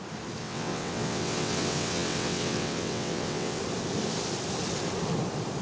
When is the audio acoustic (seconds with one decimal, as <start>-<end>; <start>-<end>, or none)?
0.0-0.4; 3.6-5.6